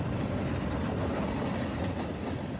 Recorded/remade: recorded